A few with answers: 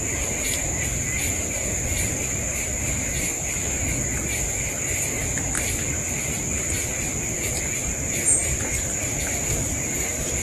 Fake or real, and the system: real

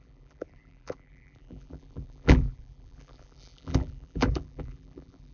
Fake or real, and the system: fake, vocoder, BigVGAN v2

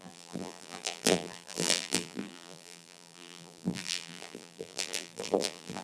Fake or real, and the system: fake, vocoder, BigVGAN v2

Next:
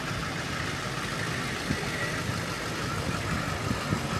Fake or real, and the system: real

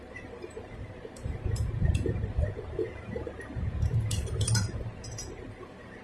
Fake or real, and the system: fake, vocoder, BigVGAN v2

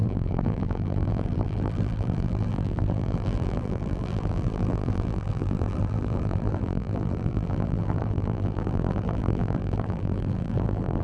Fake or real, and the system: fake, vocoder, BigVGAN v2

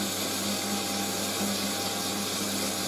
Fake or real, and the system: real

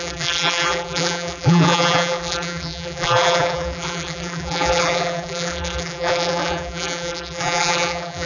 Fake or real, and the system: fake, vocoder, BigVGAN v2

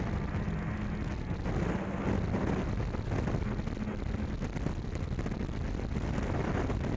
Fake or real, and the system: real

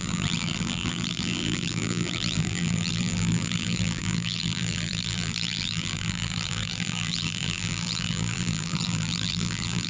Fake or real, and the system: fake, vocoder, BigVGAN v2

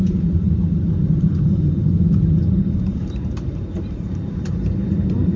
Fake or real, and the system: fake, vocoder, BigVGAN v2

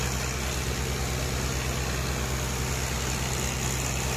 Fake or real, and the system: real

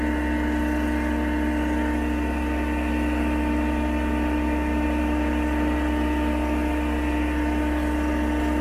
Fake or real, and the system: real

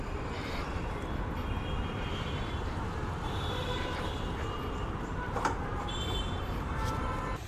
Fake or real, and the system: fake, vocoder, BigVGAN v2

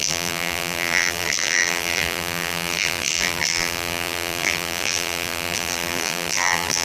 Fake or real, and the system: fake, vocoder, BigVGAN v2